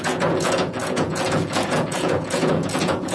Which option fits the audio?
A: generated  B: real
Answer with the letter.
A